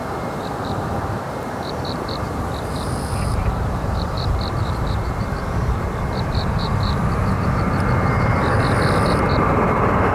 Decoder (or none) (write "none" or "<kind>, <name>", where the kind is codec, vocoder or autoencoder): vocoder, BigVGAN v2